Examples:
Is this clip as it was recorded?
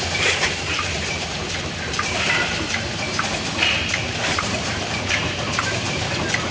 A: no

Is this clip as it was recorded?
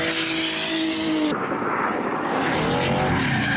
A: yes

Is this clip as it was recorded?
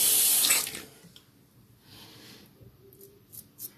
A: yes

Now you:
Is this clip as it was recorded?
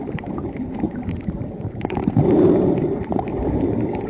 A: no